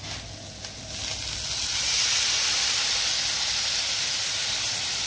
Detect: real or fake real